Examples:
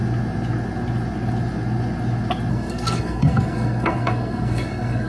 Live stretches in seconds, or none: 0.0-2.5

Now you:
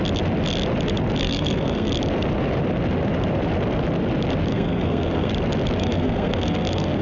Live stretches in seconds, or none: 0.0-1.2; 1.9-4.5; 5.3-5.8